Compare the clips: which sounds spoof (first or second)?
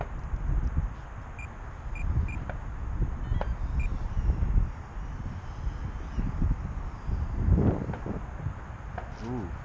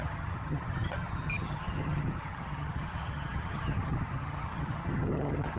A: second